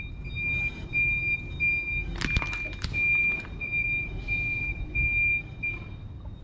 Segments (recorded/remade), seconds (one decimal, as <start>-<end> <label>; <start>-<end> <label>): 0.0-6.4 recorded